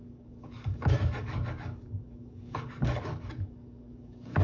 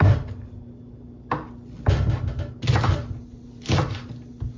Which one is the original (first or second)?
second